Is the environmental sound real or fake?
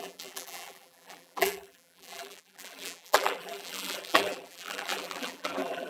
fake